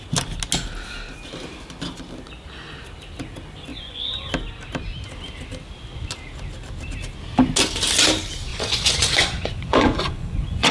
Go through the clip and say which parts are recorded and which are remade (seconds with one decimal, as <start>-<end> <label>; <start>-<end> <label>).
0.0-3.7 recorded; 3.7-4.3 remade; 4.3-8.5 recorded; 8.5-10.7 remade